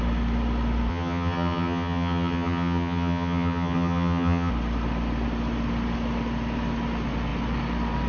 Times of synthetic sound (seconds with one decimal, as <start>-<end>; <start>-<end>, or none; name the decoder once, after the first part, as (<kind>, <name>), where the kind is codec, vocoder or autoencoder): 0.9-4.5 (vocoder, HiFi-GAN)